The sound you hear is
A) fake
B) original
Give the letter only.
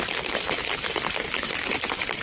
B